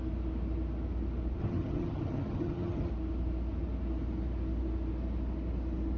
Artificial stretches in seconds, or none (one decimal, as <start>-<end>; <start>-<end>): 1.4-2.9